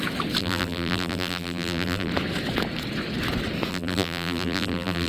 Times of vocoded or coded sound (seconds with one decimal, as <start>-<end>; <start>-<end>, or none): 0.4-2.1; 3.7-5.1